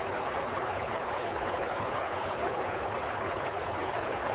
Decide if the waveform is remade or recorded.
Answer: remade